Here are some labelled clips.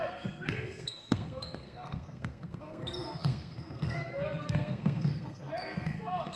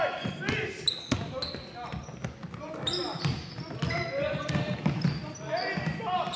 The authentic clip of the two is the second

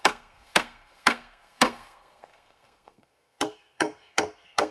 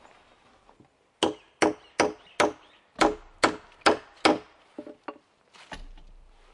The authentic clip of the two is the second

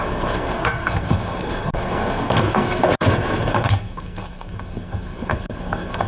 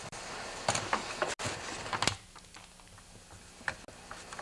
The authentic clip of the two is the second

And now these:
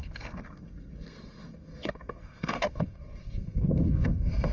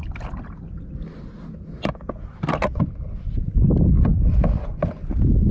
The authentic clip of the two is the second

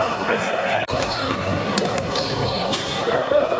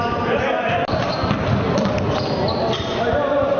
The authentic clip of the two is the second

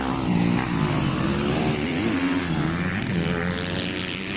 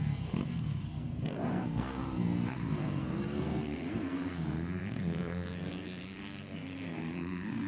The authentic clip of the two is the first